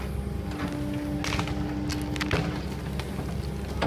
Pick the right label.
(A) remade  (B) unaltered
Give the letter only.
B